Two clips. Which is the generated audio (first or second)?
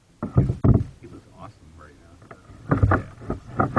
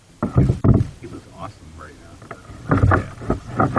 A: second